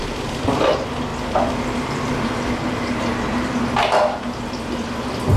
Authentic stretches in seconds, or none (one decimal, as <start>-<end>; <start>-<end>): 0.0-5.4